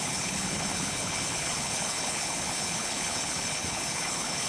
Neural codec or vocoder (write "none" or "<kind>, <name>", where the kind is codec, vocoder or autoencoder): codec, HILCodec